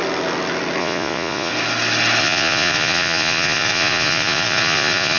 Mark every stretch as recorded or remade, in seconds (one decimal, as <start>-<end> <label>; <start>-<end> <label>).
0.0-0.8 recorded; 0.8-1.5 remade; 1.5-2.2 recorded; 2.2-5.2 remade